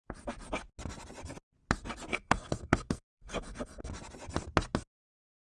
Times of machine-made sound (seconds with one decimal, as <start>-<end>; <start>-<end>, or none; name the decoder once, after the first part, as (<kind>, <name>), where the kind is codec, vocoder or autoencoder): 2.1-3.9 (codec, SNAC)